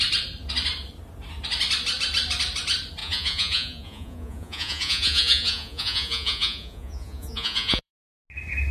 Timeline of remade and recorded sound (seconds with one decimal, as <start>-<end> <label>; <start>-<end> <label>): 0.0-3.0 recorded; 3.0-7.9 remade; 7.9-8.7 recorded